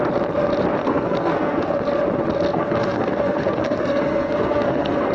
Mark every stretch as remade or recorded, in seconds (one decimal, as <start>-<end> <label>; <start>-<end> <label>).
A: 0.0-0.8 recorded; 0.8-1.8 remade; 1.8-2.5 recorded; 2.5-5.1 remade